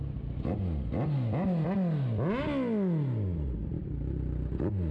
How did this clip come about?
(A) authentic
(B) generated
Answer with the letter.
A